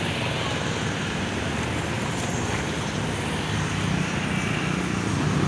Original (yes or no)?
yes